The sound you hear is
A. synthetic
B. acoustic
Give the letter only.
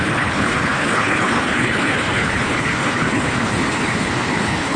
A